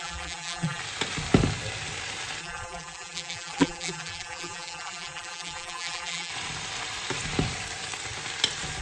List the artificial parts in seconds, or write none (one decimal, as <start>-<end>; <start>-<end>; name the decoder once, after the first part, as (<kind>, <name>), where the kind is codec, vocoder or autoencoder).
0.0-0.8 (vocoder, BigVGAN v2); 2.4-6.3